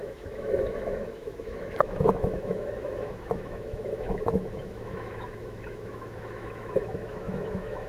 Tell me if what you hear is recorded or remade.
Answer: remade